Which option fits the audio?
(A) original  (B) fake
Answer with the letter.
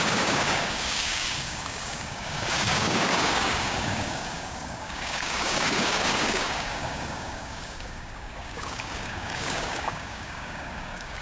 B